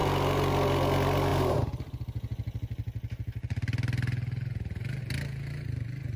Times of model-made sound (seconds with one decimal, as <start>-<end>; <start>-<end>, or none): none